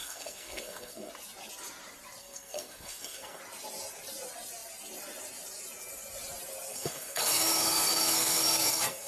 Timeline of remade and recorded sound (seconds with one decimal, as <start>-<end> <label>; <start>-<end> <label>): 0.0-1.1 remade; 1.1-2.2 recorded; 2.2-3.4 remade; 3.4-6.7 recorded; 6.7-9.1 remade